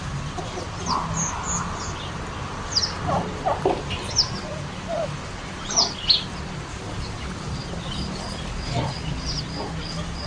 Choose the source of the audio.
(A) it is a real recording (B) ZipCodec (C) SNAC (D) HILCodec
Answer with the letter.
A